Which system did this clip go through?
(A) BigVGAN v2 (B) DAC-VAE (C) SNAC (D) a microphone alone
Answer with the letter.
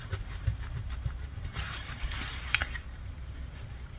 A